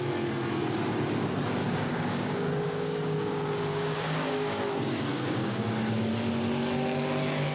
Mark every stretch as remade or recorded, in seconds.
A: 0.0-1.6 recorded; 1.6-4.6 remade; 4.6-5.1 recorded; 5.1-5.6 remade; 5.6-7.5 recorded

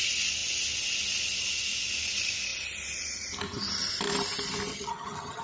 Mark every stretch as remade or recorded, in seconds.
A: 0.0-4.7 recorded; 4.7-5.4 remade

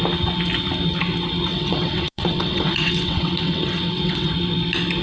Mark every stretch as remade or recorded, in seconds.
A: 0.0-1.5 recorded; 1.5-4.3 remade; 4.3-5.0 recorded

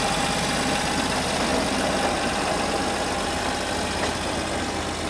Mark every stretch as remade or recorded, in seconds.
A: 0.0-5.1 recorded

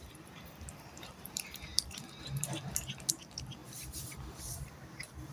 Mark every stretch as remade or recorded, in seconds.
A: 0.0-3.6 remade; 3.6-4.4 recorded; 4.4-5.3 remade

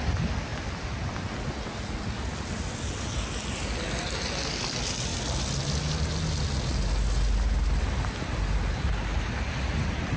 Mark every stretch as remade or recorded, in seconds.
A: 0.0-10.2 recorded

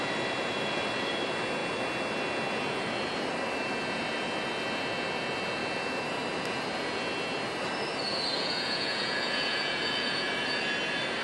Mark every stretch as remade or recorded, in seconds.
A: 0.0-8.3 recorded; 8.3-10.3 remade; 10.3-11.2 recorded